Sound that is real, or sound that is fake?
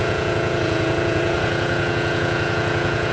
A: fake